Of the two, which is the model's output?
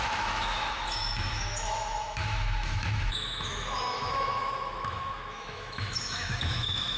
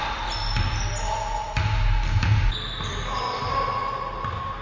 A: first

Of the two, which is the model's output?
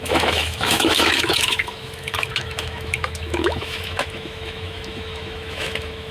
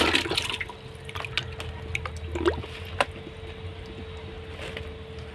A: first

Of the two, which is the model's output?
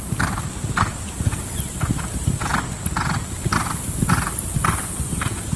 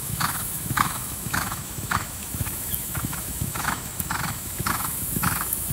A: second